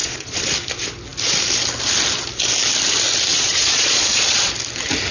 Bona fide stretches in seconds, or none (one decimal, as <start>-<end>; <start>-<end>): 0.5-3.3; 4.5-5.1